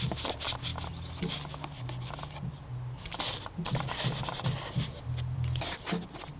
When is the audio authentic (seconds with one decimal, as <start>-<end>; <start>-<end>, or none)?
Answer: 0.0-6.4